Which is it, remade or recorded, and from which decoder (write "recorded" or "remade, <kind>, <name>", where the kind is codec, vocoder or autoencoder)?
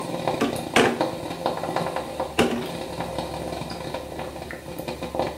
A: recorded